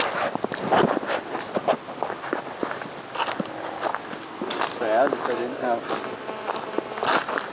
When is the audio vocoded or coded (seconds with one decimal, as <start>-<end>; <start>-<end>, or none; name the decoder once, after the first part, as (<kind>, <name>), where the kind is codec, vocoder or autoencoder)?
none